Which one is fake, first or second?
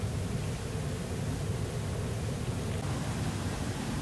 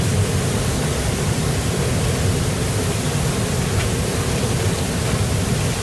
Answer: second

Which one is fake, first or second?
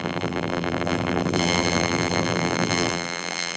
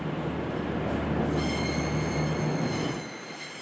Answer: first